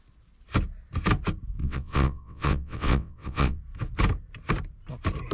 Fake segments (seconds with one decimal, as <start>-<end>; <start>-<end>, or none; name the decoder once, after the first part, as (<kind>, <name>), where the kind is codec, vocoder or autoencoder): 1.6-3.6 (vocoder, WaveNeXt)